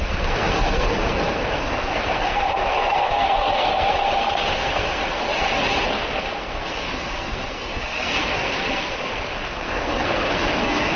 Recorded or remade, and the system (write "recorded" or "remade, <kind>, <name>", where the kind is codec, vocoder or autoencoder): remade, codec, SNAC